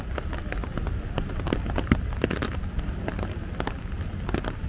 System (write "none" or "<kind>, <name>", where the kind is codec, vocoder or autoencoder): none